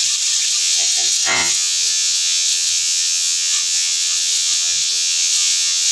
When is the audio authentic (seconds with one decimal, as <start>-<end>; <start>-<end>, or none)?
0.0-0.6